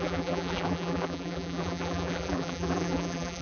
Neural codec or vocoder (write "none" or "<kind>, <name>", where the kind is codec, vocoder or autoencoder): vocoder, BigVGAN v2